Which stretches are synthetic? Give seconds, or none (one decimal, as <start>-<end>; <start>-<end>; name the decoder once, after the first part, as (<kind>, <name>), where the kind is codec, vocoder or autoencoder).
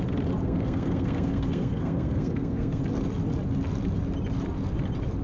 0.4-2.8 (codec, SNAC)